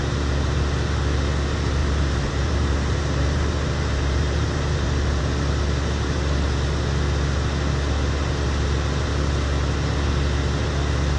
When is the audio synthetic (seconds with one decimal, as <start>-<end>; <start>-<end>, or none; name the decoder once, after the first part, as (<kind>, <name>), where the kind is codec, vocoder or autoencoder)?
1.8-5.2 (vocoder, BigVGAN v2)